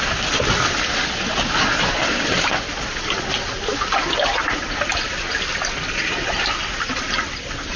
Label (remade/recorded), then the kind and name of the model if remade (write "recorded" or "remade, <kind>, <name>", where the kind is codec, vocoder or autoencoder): recorded